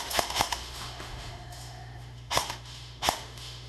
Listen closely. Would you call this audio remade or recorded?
remade